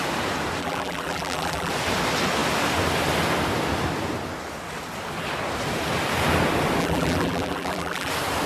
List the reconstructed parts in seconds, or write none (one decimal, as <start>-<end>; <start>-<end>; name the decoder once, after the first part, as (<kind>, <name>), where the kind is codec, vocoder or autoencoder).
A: 0.6-1.7 (vocoder, BigVGAN v2); 6.8-8.1